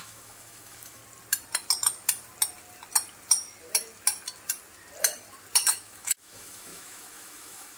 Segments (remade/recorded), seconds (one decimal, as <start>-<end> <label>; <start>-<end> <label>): 0.0-1.0 remade; 1.0-5.7 recorded; 5.7-7.8 remade